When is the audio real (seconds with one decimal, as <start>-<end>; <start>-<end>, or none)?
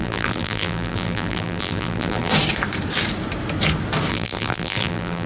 2.3-4.1